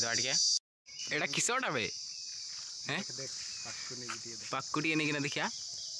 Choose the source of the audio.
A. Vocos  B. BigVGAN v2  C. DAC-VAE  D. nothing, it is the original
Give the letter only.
D